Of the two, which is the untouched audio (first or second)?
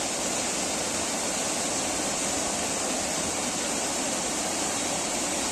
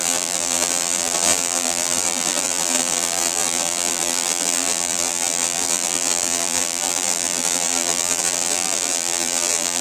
first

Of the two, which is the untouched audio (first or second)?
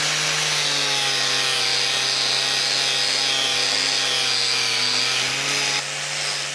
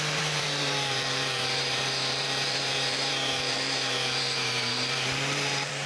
first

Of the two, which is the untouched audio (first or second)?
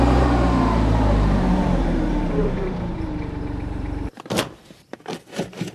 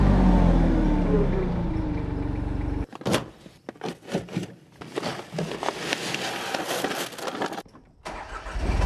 second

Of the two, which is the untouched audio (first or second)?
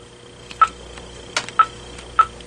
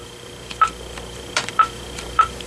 first